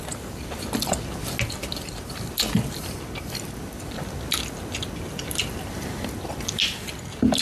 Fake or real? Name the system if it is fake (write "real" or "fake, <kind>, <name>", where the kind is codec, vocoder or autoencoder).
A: real